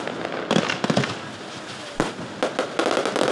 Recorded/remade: recorded